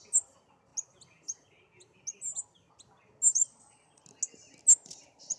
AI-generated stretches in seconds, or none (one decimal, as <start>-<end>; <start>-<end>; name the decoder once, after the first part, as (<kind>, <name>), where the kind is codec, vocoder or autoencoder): 3.3-4.0 (vocoder, Vocos)